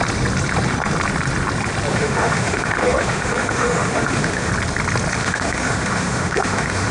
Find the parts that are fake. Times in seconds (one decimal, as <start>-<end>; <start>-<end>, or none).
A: 1.9-4.5; 5.2-6.9